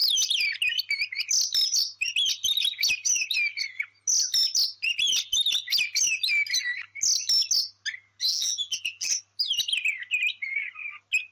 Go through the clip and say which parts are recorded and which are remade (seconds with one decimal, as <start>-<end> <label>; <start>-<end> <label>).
0.0-8.3 recorded; 8.3-9.1 remade; 9.1-11.3 recorded